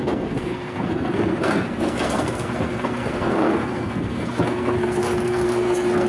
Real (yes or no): no